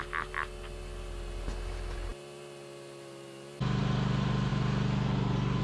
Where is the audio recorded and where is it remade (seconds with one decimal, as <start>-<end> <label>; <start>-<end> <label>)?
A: 0.0-5.6 recorded